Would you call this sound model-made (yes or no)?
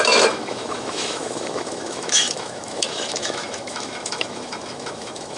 yes